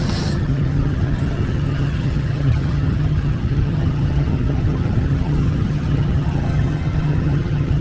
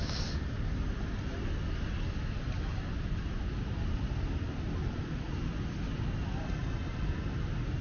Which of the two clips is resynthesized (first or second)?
first